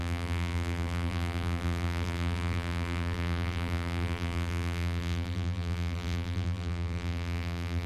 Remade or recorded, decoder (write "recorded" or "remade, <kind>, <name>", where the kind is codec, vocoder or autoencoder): remade, vocoder, BigVGAN v2